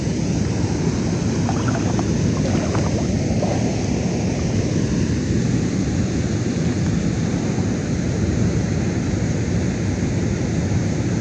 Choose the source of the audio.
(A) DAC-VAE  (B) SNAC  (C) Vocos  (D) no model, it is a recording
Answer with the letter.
D